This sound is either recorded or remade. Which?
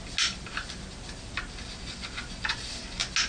recorded